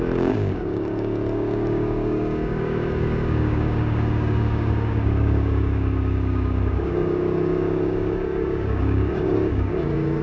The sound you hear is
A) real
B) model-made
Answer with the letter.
B